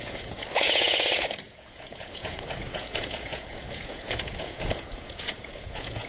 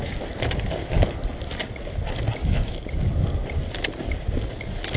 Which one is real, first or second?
second